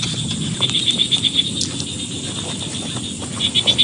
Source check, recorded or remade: recorded